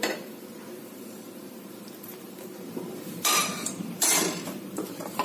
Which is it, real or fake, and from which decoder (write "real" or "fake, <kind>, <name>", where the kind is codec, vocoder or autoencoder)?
fake, vocoder, BigVGAN v2